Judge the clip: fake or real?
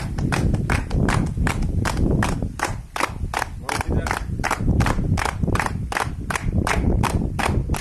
fake